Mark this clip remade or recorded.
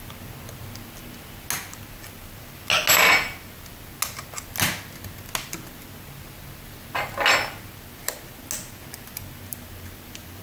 recorded